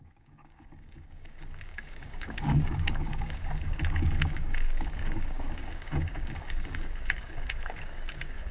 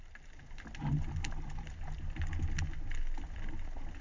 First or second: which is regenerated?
first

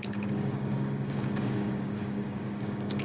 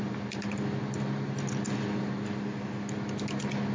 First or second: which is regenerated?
first